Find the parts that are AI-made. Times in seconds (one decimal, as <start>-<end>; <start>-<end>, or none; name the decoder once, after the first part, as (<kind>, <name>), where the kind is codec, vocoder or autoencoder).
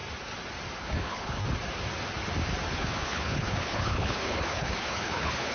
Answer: 0.8-1.4 (codec, HILCodec); 2.7-5.5